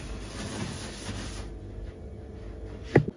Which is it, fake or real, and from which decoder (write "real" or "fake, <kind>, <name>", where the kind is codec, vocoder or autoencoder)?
real